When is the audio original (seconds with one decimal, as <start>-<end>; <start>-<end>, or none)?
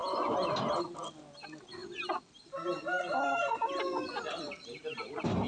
0.0-5.5